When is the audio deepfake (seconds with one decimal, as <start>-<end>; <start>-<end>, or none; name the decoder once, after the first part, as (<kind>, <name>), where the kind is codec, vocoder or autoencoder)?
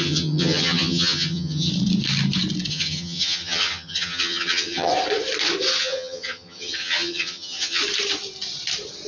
0.0-1.7 (vocoder, HiFi-GAN); 2.7-4.9; 5.8-7.8